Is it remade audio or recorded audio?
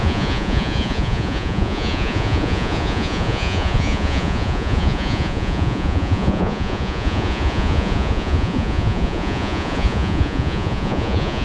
remade